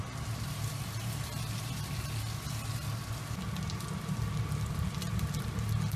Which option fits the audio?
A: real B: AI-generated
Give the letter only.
A